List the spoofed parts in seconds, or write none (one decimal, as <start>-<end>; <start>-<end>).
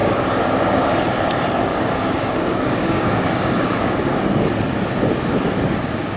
0.0-0.9; 1.7-4.4